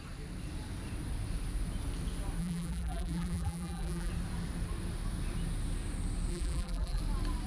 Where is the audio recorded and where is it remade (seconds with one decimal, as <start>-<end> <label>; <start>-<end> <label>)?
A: 0.0-2.4 recorded; 2.4-4.1 remade; 4.1-6.3 recorded; 6.3-7.0 remade; 7.0-7.5 recorded